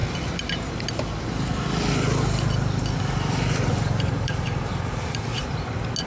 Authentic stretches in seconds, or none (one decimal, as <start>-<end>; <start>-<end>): 0.0-3.7; 4.7-6.1